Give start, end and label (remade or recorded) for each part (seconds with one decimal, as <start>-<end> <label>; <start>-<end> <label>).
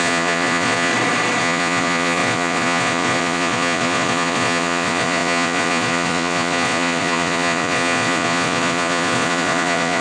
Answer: 0.0-0.9 remade; 0.9-1.4 recorded; 1.4-10.0 remade